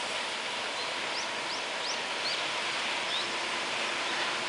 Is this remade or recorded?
recorded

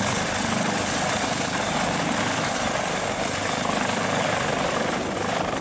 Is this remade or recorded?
recorded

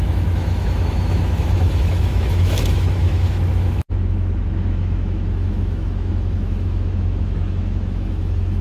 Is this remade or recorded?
remade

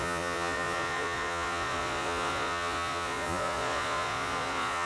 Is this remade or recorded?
remade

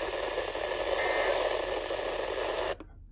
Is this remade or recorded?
recorded